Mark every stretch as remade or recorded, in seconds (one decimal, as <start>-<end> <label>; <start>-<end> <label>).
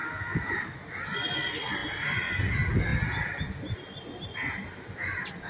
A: 0.0-0.8 remade; 0.8-5.5 recorded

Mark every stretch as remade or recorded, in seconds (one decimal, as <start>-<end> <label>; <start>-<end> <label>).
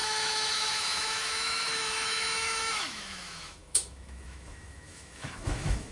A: 0.0-5.9 remade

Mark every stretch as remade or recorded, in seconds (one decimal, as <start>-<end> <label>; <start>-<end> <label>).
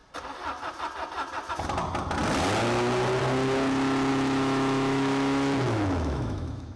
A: 0.0-4.1 recorded; 4.1-6.8 remade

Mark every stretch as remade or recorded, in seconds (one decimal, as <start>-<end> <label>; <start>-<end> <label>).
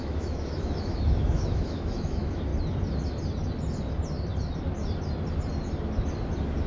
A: 0.0-2.5 remade; 2.5-6.7 recorded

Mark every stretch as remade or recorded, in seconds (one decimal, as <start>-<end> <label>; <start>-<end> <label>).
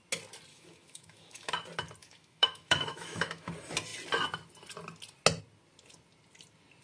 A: 0.0-0.5 recorded; 0.5-1.5 remade; 1.5-2.0 recorded; 2.0-3.5 remade; 3.5-6.8 recorded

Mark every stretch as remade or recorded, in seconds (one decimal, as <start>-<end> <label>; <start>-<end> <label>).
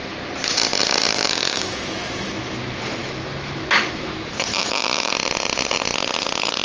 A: 0.0-1.1 recorded; 1.1-5.1 remade; 5.1-6.6 recorded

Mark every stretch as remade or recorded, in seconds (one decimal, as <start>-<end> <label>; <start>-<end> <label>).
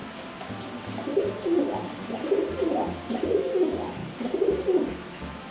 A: 0.0-3.3 recorded; 3.3-4.0 remade; 4.0-4.9 recorded; 4.9-5.5 remade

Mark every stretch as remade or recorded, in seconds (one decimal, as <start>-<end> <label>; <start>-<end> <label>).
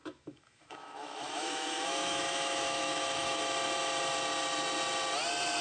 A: 0.0-3.4 remade; 3.4-5.6 recorded